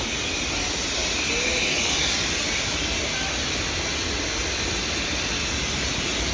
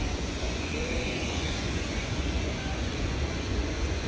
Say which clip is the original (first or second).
first